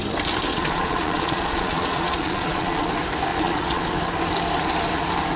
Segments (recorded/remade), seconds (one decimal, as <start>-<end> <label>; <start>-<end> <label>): 0.0-0.5 recorded; 0.5-2.9 remade; 2.9-3.3 recorded; 3.3-3.8 remade; 3.8-5.4 recorded

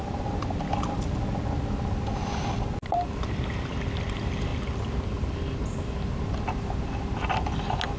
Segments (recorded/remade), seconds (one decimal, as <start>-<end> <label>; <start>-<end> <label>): 0.0-8.0 recorded